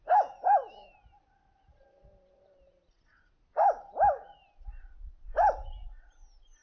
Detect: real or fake real